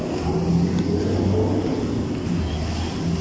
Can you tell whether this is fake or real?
real